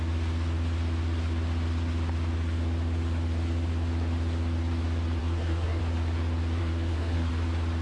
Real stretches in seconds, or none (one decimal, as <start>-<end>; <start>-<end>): 0.0-5.2; 5.8-6.6; 7.3-7.8